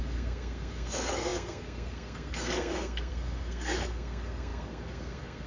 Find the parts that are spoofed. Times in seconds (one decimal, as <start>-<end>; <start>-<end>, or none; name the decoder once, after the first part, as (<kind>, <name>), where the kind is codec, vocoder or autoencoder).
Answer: 0.0-5.5 (codec, SNAC)